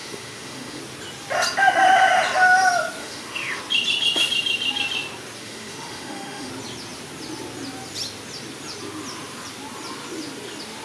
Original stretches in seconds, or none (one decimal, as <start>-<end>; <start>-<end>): 0.8-3.0; 3.6-5.4; 6.5-10.8